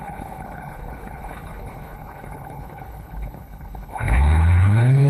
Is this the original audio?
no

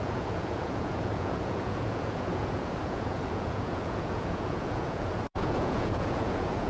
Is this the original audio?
no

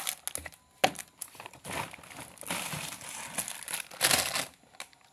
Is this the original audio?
yes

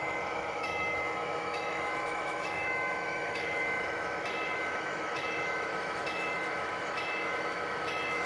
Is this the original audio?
no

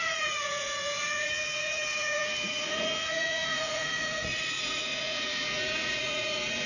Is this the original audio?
no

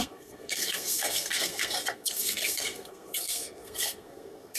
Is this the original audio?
no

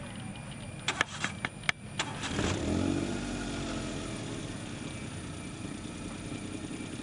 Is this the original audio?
yes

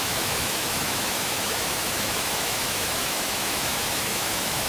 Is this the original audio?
no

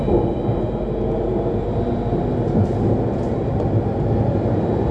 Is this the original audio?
yes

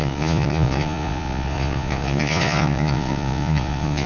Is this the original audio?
no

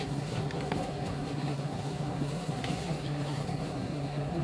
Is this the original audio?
no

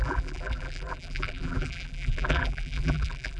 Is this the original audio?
no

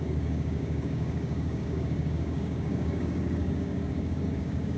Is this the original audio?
no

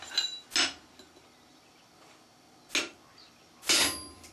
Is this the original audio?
yes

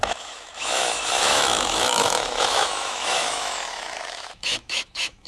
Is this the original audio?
no